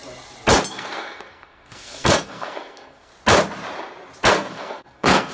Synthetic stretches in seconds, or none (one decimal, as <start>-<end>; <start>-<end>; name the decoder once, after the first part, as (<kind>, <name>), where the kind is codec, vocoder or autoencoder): 0.7-3.1 (codec, SNAC); 4.3-5.3